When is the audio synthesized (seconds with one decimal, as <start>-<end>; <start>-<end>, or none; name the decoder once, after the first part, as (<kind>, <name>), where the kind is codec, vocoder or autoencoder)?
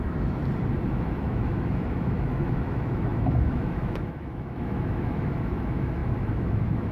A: 0.0-0.4 (autoencoder, DAC-VAE); 0.9-6.9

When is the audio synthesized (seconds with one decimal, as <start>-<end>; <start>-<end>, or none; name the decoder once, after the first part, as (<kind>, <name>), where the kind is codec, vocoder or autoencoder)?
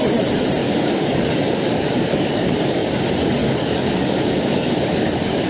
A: 0.6-3.0 (codec, DAC); 3.4-5.5